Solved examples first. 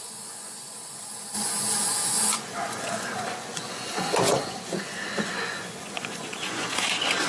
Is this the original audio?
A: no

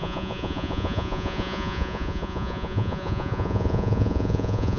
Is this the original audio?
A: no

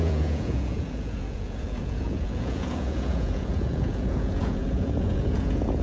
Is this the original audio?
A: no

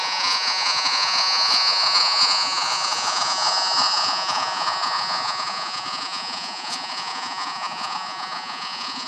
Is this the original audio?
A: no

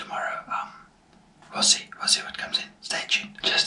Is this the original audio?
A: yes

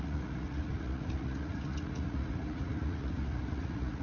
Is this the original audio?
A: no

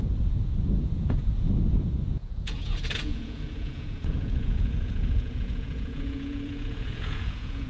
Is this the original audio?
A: no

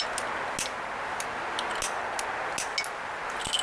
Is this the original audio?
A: yes